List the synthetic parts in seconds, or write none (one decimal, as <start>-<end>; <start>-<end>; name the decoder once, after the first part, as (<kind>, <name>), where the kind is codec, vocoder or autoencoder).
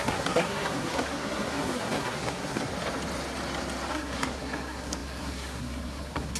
0.0-2.7 (codec, SNAC); 3.9-6.4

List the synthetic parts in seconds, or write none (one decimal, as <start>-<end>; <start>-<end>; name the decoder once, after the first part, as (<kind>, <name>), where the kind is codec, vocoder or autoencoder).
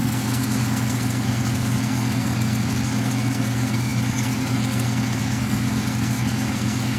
0.0-7.0 (codec, SNAC)